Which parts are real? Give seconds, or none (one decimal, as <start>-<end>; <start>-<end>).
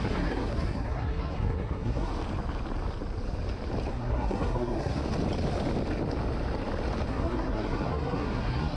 2.1-3.9; 5.0-7.1